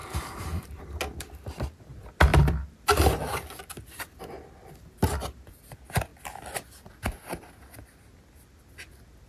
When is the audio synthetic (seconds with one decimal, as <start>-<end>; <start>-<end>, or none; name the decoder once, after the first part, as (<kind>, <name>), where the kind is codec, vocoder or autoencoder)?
0.0-0.8 (vocoder, BigVGAN v2)